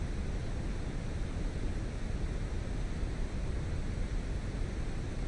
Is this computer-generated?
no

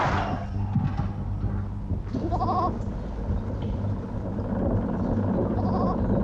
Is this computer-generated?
no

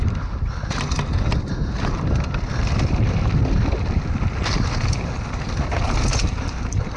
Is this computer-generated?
yes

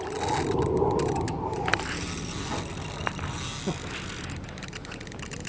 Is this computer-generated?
no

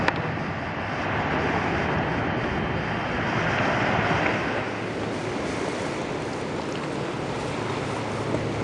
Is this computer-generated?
no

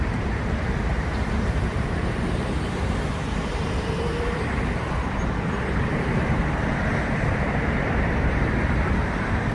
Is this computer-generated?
yes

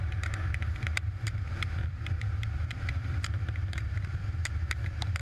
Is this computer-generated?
yes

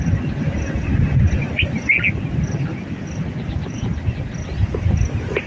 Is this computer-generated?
no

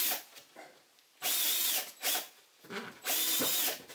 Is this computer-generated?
no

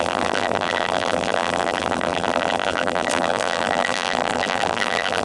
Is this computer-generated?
yes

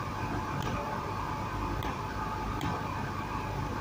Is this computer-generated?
no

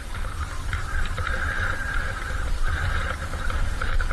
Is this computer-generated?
yes